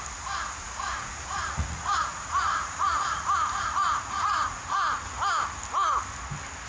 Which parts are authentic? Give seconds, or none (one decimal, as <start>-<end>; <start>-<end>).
0.0-0.6; 4.6-6.7